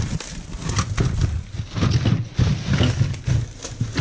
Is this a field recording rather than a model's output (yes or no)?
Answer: yes